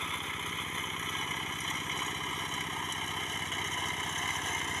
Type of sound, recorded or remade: recorded